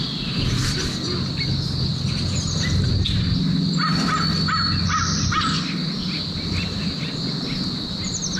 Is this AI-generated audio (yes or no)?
no